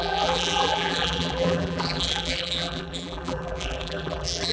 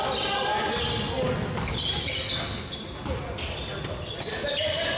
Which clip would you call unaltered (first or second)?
second